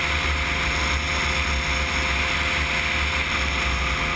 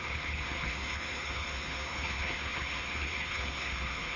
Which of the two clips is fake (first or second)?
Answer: second